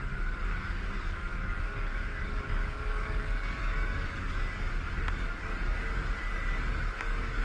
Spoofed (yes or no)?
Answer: yes